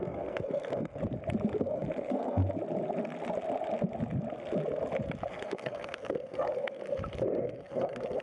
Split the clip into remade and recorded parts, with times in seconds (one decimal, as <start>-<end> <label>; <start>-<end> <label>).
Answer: 0.0-1.0 remade; 1.0-1.6 recorded; 1.6-2.4 remade; 2.4-5.3 recorded; 5.3-6.8 remade; 6.8-7.4 recorded; 7.4-8.2 remade